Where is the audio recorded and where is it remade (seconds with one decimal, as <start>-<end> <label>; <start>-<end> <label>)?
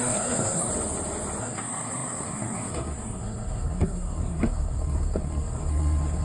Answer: 0.0-0.7 remade; 0.7-1.4 recorded; 1.4-6.2 remade